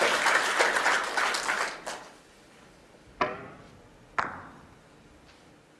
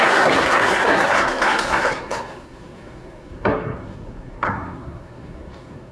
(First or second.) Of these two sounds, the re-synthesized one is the second